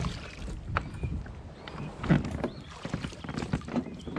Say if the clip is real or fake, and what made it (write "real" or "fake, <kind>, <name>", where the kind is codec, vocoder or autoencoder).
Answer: fake, vocoder, BigVGAN v2